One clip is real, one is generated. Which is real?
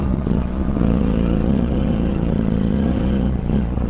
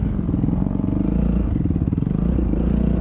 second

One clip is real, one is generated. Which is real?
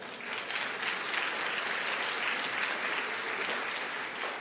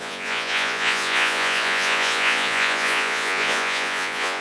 first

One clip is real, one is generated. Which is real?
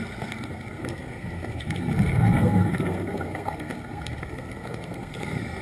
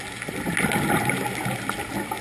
second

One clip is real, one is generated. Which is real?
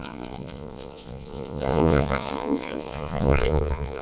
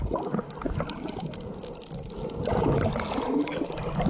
second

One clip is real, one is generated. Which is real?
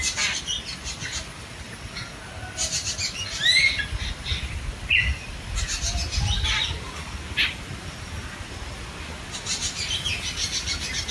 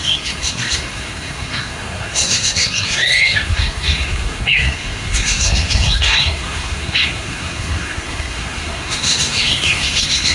first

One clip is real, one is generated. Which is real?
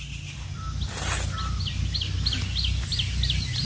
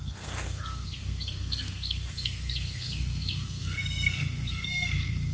first